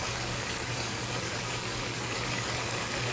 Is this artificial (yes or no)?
yes